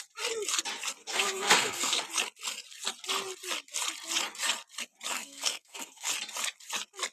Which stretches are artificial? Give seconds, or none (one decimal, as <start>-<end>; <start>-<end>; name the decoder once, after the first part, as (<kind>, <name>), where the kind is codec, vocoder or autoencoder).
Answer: 1.0-2.0 (codec, SNAC); 5.1-6.1

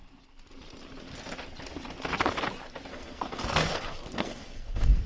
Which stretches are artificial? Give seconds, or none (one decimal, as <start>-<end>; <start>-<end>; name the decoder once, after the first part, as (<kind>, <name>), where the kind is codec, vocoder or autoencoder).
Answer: 2.9-5.1 (codec, SNAC)

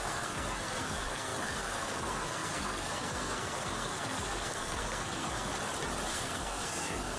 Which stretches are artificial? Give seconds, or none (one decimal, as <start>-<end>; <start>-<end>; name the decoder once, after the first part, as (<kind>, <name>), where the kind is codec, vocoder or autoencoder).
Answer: 0.0-5.5 (codec, SNAC); 6.1-7.2

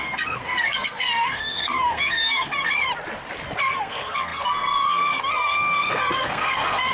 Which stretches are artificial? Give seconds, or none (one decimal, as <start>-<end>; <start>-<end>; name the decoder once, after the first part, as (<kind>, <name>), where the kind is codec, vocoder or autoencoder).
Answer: 0.0-2.9 (codec, SNAC); 3.6-6.9

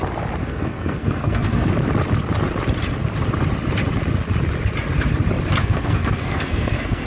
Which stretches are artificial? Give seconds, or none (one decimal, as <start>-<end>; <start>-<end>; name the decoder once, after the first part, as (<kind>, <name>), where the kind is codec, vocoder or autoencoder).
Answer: 0.4-1.7 (codec, SNAC); 5.6-7.1

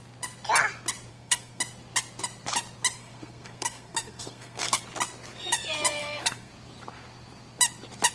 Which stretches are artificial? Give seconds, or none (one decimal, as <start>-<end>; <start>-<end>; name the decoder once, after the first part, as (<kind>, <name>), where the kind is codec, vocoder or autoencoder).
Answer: 1.1-1.6 (codec, SNAC); 3.0-4.8; 6.0-6.5

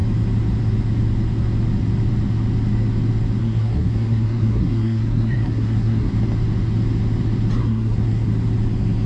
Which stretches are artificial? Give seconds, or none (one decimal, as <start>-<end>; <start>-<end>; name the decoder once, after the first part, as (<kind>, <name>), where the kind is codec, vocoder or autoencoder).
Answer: 3.4-6.1 (codec, SNAC); 7.6-8.3

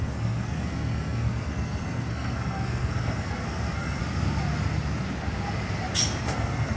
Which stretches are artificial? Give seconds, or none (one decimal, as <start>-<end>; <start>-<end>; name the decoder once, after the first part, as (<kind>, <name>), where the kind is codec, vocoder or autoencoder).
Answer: 0.0-4.0 (codec, SNAC); 6.2-6.8